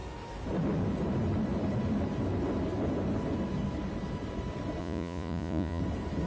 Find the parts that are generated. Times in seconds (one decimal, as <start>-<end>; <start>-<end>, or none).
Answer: 4.8-5.8